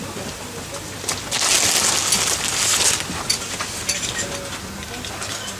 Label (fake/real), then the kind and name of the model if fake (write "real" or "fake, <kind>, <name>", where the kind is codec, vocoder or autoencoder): real